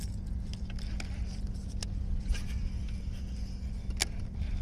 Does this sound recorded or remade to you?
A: recorded